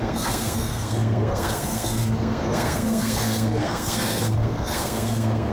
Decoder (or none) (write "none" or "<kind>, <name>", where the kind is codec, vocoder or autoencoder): codec, SNAC